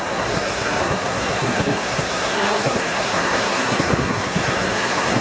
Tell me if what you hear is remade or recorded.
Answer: remade